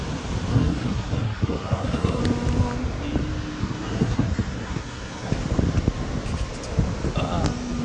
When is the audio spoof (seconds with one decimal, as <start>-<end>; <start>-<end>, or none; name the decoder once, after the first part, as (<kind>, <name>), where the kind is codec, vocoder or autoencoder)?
0.5-2.2 (codec, SNAC); 3.6-5.3